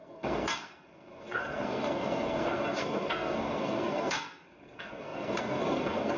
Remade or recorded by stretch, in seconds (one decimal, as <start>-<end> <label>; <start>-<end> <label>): 0.0-6.2 remade